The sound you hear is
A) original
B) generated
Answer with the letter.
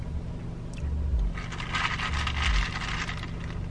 A